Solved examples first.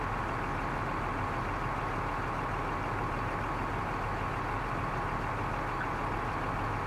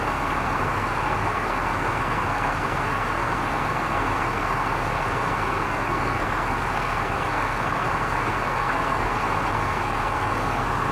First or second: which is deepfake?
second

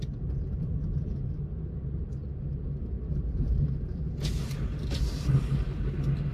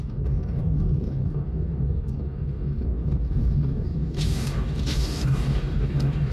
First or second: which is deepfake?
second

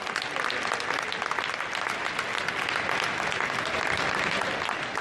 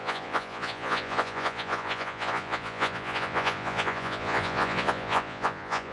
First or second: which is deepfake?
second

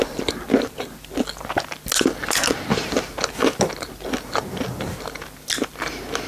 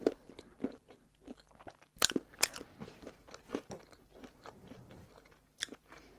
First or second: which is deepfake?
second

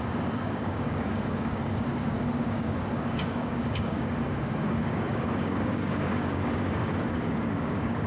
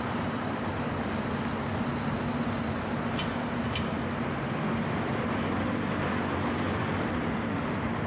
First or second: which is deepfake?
first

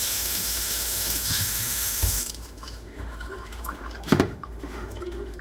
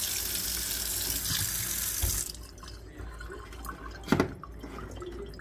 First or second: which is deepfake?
first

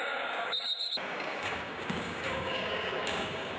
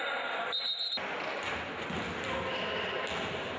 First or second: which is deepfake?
first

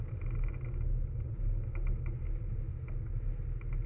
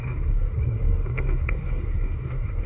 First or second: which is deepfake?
second